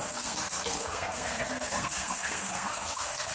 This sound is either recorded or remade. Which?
remade